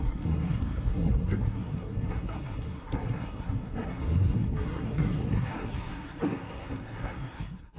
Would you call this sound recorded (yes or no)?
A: no